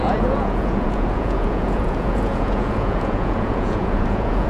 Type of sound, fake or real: fake